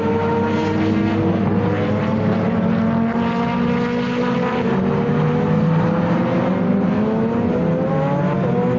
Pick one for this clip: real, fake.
real